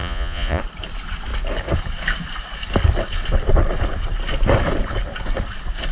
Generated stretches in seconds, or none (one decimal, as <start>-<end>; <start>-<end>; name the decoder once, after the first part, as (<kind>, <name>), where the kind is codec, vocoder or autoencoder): 0.0-0.6 (vocoder, Vocos)